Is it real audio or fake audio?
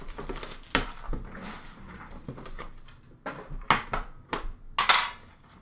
real